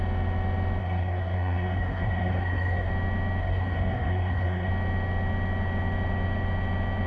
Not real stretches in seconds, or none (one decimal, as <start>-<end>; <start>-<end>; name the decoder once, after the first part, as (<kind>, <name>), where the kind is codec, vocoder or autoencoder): 0.8-2.9 (codec, SNAC); 3.4-4.7